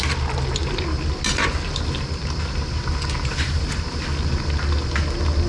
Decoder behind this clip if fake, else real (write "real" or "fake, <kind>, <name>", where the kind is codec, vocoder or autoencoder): real